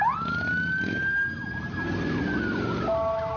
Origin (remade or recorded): recorded